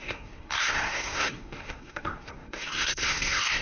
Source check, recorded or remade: remade